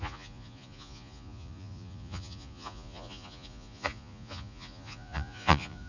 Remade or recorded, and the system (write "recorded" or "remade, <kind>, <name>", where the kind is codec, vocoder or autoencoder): remade, vocoder, Vocos